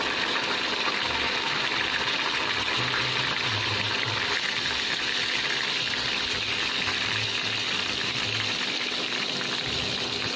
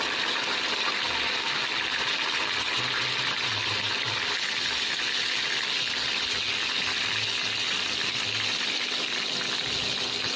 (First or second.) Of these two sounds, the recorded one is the second